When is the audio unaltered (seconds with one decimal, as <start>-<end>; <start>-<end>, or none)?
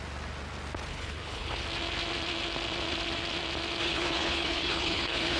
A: 0.0-0.9; 1.6-3.8